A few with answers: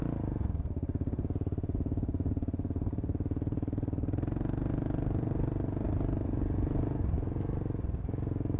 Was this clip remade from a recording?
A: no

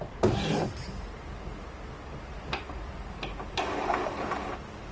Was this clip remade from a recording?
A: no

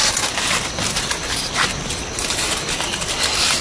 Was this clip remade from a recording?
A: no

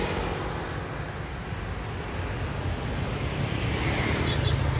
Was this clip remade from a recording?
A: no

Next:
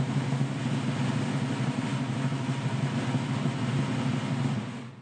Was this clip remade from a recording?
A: no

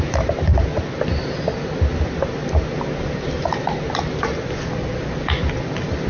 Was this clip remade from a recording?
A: no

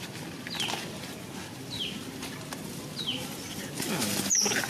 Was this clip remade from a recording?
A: no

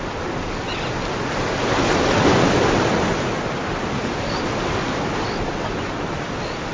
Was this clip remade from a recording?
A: no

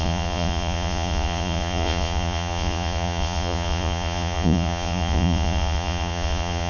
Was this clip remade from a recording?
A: yes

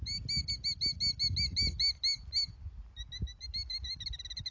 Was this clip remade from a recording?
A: no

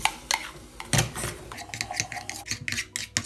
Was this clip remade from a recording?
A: no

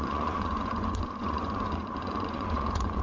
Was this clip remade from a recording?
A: yes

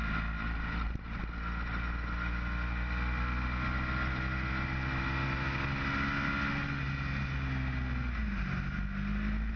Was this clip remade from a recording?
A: no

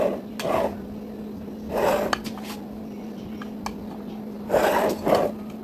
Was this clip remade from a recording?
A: no